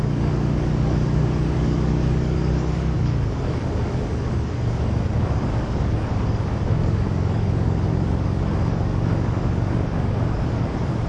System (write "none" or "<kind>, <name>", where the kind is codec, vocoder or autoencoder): codec, DAC